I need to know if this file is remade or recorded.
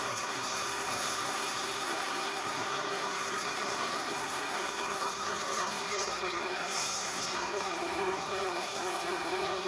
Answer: remade